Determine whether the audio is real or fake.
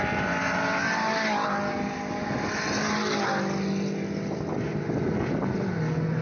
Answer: real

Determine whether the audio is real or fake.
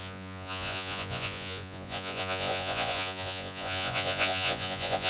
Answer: fake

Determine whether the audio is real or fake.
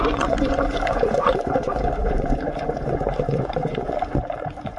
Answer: fake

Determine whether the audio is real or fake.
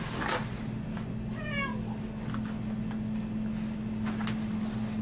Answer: real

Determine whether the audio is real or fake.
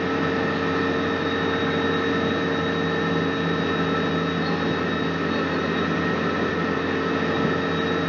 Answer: real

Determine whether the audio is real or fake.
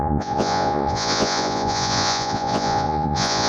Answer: fake